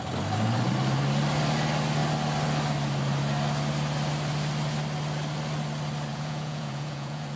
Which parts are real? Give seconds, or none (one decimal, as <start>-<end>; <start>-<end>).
0.0-6.1